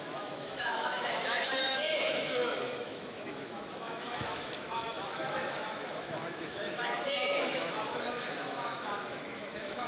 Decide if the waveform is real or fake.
fake